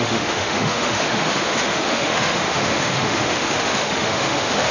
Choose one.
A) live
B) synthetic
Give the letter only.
B